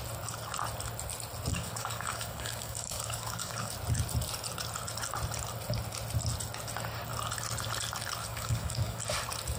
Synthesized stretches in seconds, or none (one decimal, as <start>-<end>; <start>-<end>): 1.5-3.7; 8.3-9.0